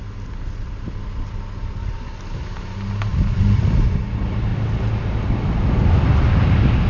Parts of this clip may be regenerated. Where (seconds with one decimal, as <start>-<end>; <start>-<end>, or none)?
3.1-4.0; 4.5-6.5